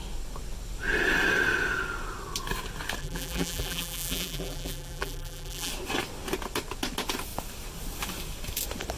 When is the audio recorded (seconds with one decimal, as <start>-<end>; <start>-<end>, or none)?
0.0-3.0; 5.7-9.0